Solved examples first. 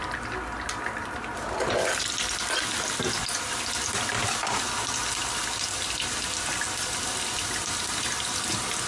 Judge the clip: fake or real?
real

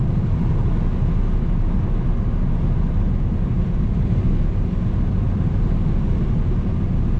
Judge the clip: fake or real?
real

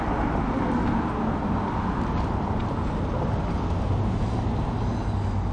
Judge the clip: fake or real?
real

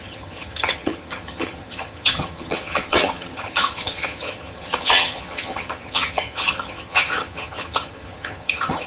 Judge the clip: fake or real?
fake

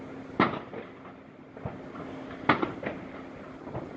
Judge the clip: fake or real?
real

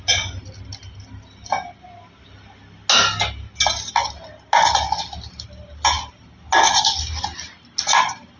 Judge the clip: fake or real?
real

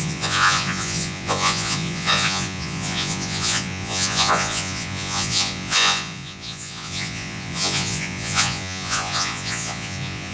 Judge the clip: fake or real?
fake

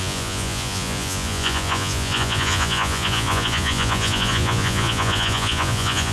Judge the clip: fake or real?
fake